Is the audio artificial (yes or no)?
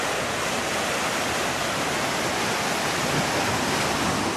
no